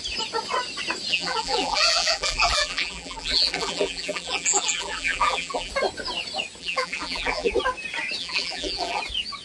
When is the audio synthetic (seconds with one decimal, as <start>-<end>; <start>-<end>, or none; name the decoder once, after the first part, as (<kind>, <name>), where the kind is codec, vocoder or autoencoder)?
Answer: 1.1-5.7 (vocoder, BigVGAN v2); 6.6-7.5; 8.2-9.0